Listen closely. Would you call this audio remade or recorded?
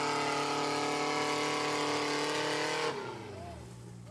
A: recorded